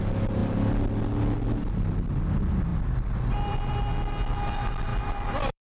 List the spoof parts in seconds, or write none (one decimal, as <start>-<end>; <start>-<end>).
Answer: 0.4-1.0; 2.7-3.8; 4.9-5.7